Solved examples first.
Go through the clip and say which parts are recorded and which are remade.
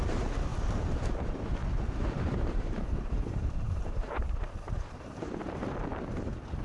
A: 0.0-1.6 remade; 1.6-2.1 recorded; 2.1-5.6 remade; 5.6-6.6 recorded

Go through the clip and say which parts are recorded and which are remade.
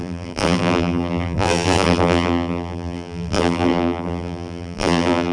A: 0.0-5.3 remade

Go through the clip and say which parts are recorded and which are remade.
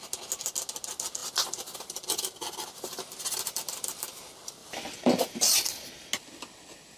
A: 0.0-1.2 recorded; 1.2-4.0 remade; 4.0-4.6 recorded; 4.6-5.3 remade; 5.3-7.0 recorded